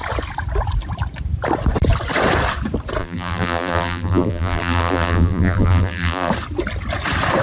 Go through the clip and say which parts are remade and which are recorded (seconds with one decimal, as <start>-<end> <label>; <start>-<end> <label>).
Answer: 0.0-3.0 recorded; 3.0-6.3 remade; 6.3-7.4 recorded